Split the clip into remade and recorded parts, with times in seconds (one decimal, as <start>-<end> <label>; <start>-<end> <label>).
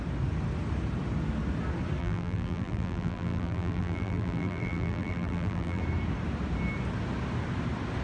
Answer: 0.0-2.0 recorded; 2.0-5.8 remade; 5.8-8.0 recorded